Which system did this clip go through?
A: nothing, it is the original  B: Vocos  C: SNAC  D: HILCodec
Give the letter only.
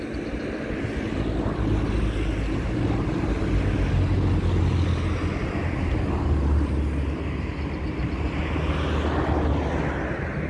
A